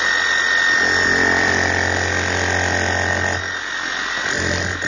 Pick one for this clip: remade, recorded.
recorded